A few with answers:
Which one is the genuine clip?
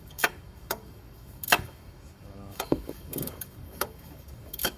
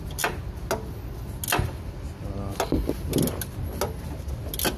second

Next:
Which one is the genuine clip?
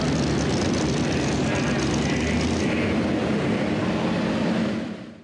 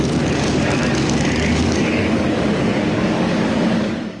first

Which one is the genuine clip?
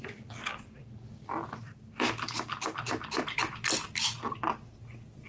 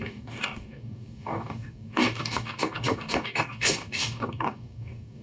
first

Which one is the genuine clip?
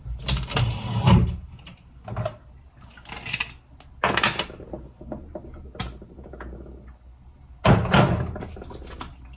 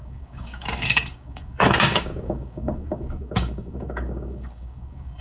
first